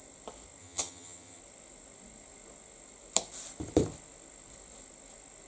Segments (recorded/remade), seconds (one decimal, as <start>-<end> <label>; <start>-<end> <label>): 0.0-0.6 recorded; 0.6-1.4 remade; 1.4-5.5 recorded